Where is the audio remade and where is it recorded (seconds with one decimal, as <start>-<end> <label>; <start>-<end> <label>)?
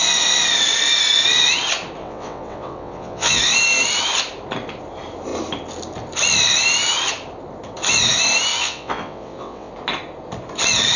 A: 0.0-2.0 recorded; 2.0-3.4 remade; 3.4-8.5 recorded; 8.5-9.7 remade; 9.7-11.0 recorded